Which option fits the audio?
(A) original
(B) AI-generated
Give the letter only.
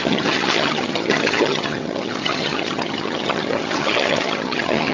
B